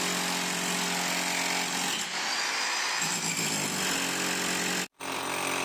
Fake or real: real